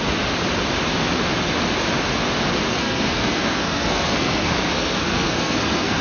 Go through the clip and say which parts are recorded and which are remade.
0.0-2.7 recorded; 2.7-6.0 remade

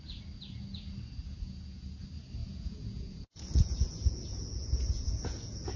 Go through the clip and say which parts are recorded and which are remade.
0.0-1.2 recorded; 1.2-2.0 remade; 2.0-2.4 recorded; 2.4-5.8 remade

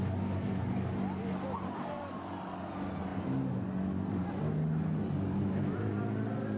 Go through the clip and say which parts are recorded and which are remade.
0.0-6.6 recorded

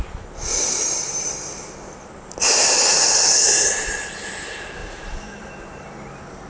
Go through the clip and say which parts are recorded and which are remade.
0.0-2.9 recorded; 2.9-3.9 remade; 3.9-4.8 recorded; 4.8-5.5 remade; 5.5-6.5 recorded

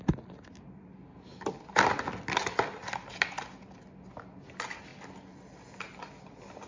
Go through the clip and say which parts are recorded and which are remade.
0.0-6.7 recorded

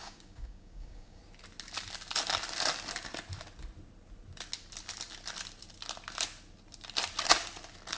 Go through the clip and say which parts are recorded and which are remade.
0.0-1.2 remade; 1.2-8.0 recorded